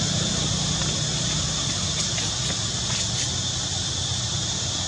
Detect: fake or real real